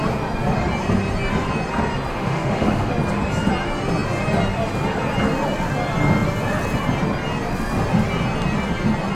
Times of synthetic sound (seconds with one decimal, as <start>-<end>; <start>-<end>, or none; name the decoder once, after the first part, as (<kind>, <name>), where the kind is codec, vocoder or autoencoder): 2.1-2.9 (autoencoder, DAC-VAE)